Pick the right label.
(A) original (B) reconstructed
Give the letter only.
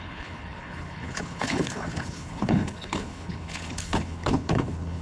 B